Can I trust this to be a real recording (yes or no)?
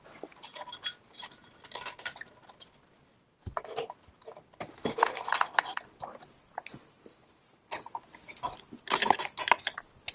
yes